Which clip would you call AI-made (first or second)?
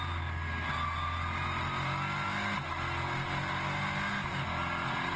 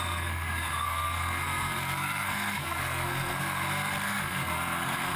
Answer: second